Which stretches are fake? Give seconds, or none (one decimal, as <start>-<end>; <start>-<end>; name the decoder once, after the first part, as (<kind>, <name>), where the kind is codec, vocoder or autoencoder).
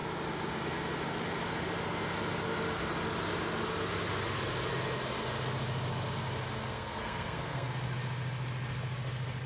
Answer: 6.7-7.7 (codec, SNAC)